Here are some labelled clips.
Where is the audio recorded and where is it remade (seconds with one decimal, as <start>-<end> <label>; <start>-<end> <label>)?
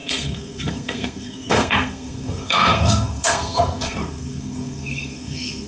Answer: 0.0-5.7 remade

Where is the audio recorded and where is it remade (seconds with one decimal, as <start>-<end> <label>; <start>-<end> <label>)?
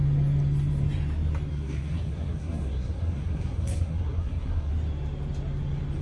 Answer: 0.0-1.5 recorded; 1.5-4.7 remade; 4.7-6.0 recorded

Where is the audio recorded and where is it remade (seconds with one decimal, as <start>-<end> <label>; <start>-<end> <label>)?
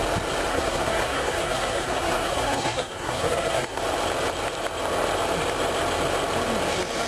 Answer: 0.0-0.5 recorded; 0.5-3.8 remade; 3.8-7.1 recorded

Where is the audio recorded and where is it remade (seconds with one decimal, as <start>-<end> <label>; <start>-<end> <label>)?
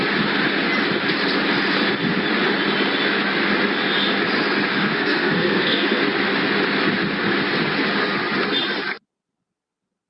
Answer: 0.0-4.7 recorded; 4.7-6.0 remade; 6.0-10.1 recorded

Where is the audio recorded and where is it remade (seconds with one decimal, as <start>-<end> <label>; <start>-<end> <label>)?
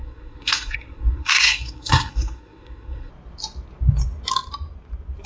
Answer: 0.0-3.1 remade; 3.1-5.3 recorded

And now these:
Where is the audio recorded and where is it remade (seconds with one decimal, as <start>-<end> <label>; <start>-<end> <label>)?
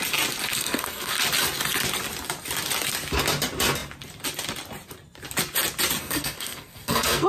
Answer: 0.0-0.5 recorded; 0.5-1.1 remade; 1.1-6.0 recorded; 6.0-7.3 remade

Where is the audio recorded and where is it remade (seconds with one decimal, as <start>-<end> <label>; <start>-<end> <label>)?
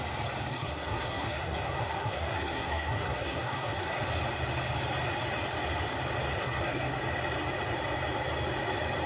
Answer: 0.0-0.5 recorded; 0.5-4.0 remade; 4.0-6.3 recorded; 6.3-7.0 remade; 7.0-9.1 recorded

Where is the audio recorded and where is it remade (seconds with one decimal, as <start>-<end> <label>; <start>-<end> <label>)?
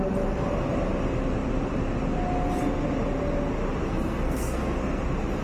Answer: 0.0-3.9 recorded; 3.9-5.0 remade; 5.0-5.4 recorded